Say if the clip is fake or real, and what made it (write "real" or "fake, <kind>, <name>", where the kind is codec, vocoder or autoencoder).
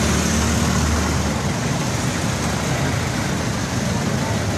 real